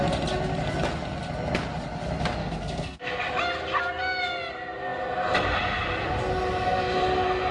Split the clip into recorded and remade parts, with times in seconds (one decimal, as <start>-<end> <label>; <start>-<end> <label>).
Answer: 0.0-2.4 recorded; 2.4-3.1 remade; 3.1-7.5 recorded